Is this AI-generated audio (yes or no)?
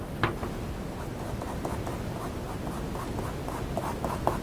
no